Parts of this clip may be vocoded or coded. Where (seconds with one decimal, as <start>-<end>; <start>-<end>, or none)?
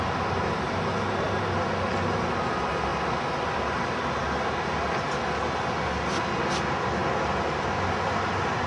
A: none